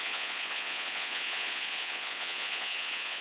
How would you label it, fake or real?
fake